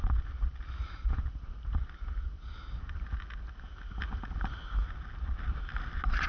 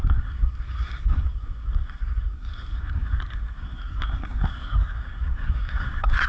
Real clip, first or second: first